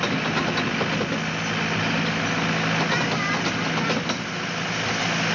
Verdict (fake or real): real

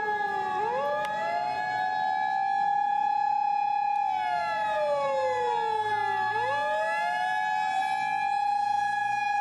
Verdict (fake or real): real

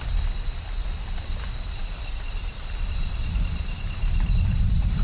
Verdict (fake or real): fake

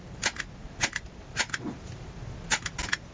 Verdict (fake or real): real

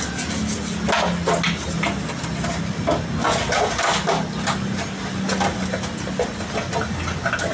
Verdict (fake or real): real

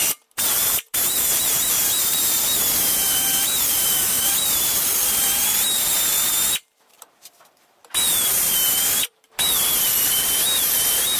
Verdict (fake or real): fake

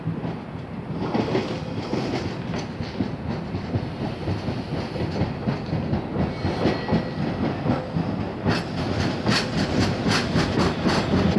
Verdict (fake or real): real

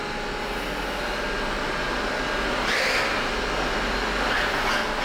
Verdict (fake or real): real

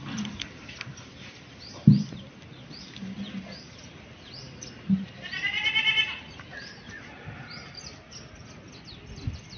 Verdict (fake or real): real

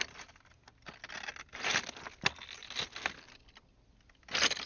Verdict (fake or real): real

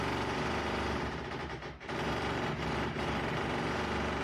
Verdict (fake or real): fake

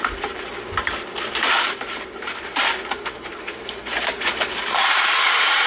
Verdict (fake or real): fake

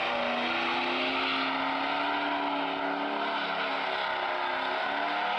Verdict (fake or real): real